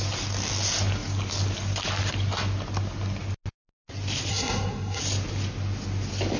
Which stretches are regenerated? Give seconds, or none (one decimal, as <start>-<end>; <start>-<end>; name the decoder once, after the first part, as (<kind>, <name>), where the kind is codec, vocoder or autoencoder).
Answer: 4.3-5.0 (codec, SNAC)